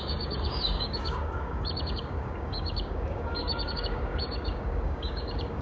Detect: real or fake fake